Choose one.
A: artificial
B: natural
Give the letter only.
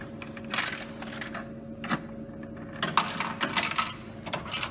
B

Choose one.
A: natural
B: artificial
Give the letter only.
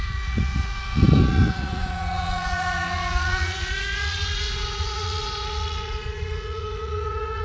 B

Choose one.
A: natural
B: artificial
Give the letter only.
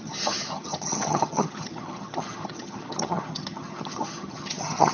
B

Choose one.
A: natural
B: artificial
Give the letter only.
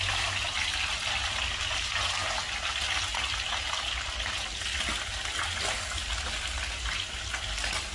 A